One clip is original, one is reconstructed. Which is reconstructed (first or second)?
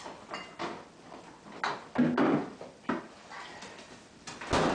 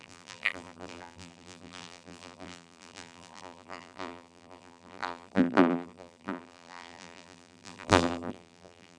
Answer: second